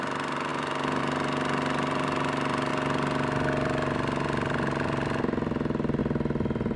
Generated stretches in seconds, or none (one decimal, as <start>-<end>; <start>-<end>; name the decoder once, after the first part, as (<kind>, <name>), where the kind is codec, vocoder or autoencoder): none